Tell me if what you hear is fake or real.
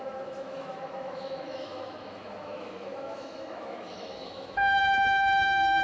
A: fake